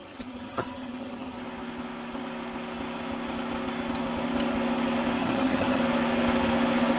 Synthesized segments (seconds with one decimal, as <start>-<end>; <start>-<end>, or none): 0.0-1.4; 5.2-5.8